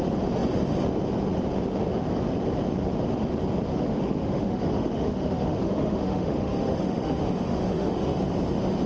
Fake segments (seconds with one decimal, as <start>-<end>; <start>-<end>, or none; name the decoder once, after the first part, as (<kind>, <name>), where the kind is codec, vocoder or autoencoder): 3.7-8.2 (autoencoder, DAC-VAE)